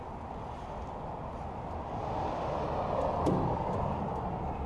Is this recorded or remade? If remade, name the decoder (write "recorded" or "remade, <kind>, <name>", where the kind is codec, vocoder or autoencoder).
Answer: recorded